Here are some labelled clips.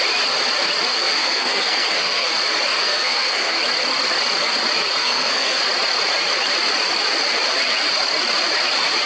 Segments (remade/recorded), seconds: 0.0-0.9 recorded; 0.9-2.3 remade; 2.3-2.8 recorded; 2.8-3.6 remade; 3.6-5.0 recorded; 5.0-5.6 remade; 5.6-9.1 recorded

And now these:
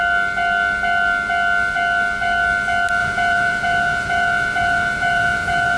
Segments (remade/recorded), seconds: 0.0-3.0 recorded; 3.0-5.8 remade

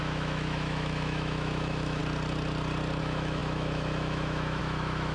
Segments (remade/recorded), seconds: 0.0-2.0 remade; 2.0-3.0 recorded; 3.0-5.1 remade

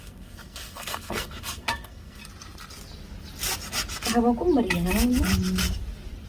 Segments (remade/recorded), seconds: 0.0-2.2 remade; 2.2-6.3 recorded

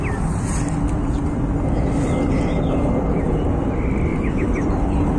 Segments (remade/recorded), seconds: 0.0-4.1 recorded; 4.1-4.7 remade; 4.7-5.2 recorded

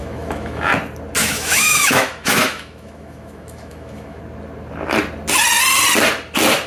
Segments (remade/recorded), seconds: 0.0-0.7 remade; 0.7-1.2 recorded; 1.2-4.2 remade; 4.2-6.7 recorded

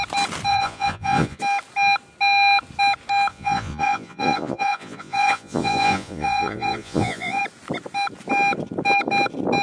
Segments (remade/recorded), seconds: 0.0-0.5 recorded; 0.5-1.4 remade; 1.4-3.3 recorded; 3.3-7.4 remade; 7.4-9.6 recorded

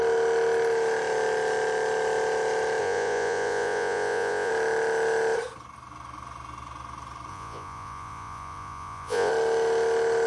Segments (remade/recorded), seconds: 0.0-2.8 recorded; 2.8-4.5 remade; 4.5-7.3 recorded; 7.3-9.3 remade; 9.3-10.3 recorded